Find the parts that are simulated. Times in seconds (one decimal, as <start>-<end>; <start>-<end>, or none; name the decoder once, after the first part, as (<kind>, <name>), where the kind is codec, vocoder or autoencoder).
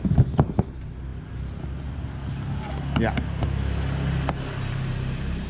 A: none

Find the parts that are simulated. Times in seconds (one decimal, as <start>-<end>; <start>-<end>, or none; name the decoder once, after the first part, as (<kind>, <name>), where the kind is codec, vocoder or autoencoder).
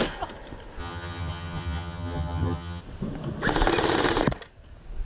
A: 0.8-2.8 (vocoder, HiFi-GAN)